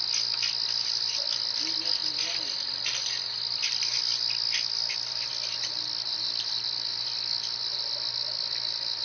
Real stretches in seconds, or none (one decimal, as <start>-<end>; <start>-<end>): 0.0-9.0